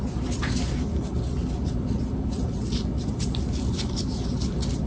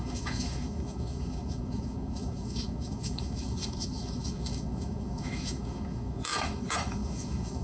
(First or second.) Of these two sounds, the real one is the first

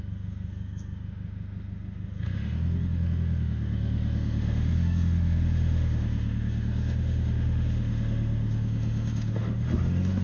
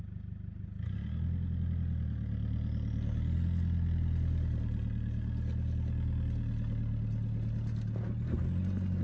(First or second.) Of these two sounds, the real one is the second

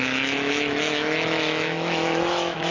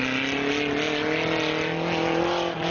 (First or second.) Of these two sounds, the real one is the second